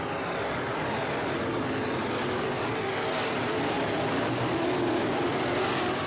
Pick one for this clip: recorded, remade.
recorded